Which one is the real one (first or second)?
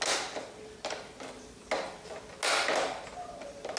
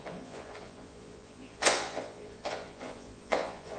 first